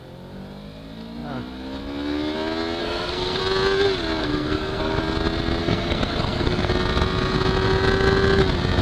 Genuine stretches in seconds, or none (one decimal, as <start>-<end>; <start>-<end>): 0.0-2.8; 3.4-4.2; 5.0-5.6; 6.7-8.8